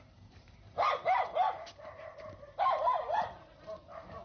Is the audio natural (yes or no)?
no